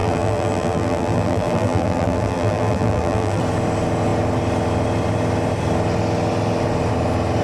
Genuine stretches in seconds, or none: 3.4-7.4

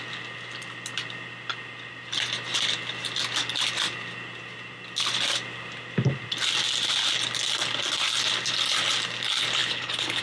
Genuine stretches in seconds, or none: 0.0-9.6

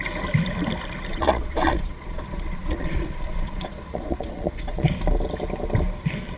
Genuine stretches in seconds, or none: 0.0-1.1; 4.9-6.4

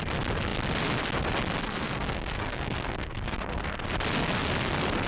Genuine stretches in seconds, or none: 0.0-1.6; 3.8-5.1

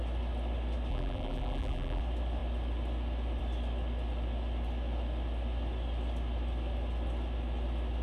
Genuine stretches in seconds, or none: 0.0-0.9; 2.0-8.0

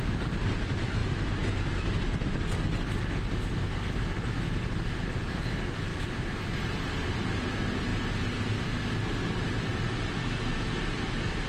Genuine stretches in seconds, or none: 0.0-11.5